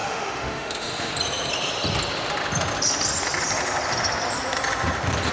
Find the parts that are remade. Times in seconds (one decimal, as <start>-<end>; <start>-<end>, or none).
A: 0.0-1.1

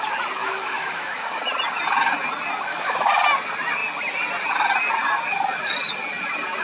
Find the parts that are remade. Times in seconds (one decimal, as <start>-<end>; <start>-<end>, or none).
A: 0.4-1.4; 2.7-3.2

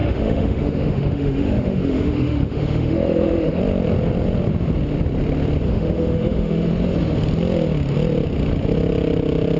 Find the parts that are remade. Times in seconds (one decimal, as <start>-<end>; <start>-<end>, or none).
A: 0.0-3.6; 5.7-6.7

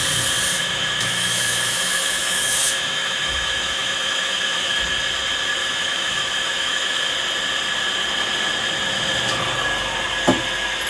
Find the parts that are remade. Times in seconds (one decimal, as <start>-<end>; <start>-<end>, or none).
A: 0.5-4.8; 5.6-7.1